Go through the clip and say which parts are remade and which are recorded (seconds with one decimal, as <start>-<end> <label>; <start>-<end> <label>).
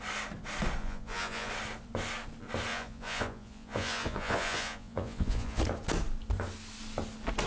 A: 0.0-0.8 recorded; 0.8-1.5 remade; 1.5-2.7 recorded; 2.7-5.6 remade; 5.6-7.5 recorded